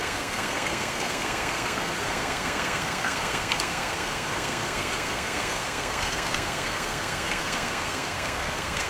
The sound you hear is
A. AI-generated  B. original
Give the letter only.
A